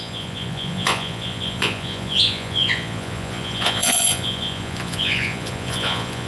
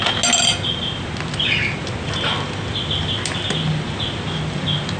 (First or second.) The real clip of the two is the second